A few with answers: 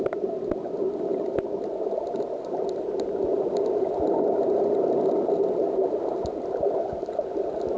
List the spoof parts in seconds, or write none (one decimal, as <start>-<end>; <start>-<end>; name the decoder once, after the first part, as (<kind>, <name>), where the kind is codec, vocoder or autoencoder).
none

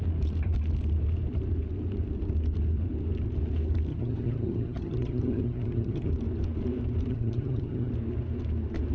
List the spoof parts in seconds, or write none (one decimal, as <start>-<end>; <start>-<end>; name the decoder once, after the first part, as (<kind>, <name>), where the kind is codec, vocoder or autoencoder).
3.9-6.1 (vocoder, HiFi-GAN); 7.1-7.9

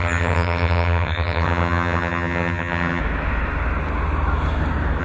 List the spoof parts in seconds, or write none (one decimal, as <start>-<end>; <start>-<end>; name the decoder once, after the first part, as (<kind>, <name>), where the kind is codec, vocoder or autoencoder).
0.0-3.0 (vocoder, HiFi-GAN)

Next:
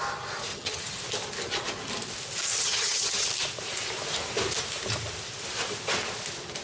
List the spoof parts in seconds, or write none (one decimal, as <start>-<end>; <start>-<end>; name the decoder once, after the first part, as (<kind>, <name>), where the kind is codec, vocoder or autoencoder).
0.5-1.0 (vocoder, HiFi-GAN); 2.5-3.3